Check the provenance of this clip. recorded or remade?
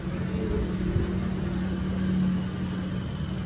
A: recorded